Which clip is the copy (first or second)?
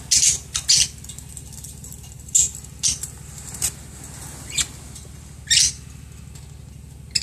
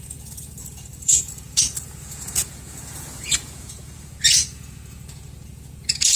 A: second